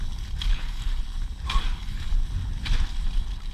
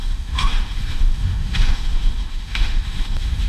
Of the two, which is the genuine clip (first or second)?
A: first